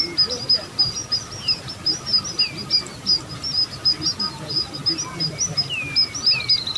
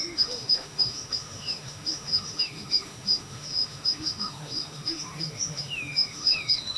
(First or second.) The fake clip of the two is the second